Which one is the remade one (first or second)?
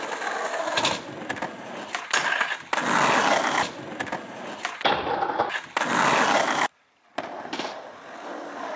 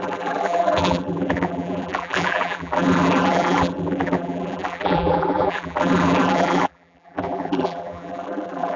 second